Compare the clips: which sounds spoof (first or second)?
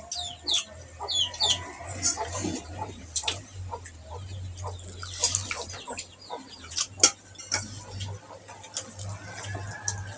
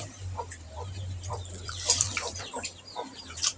second